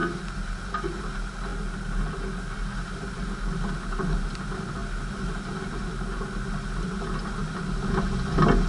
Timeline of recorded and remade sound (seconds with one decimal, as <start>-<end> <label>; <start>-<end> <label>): 0.0-8.7 recorded